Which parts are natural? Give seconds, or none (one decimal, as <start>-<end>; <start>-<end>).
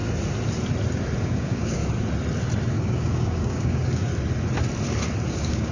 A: 0.0-1.2; 1.8-2.7; 4.1-5.3